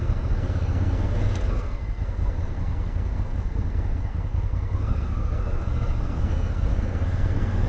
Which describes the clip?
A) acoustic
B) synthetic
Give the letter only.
B